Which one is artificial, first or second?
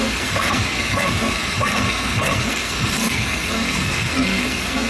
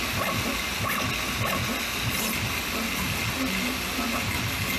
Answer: first